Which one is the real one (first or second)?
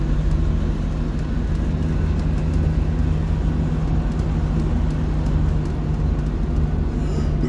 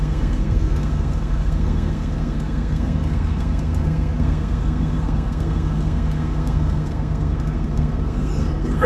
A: first